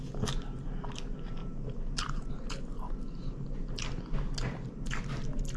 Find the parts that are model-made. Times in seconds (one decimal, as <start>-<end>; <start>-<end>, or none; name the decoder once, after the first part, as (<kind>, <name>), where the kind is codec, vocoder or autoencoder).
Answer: 1.4-2.4 (vocoder, BigVGAN v2)